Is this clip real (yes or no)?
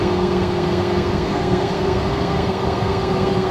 no